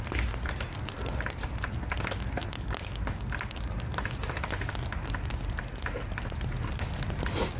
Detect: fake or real real